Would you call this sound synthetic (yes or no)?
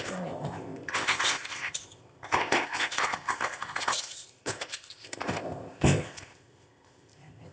yes